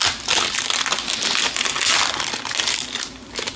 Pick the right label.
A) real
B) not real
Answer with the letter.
A